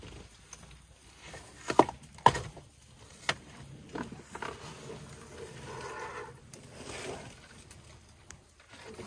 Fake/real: real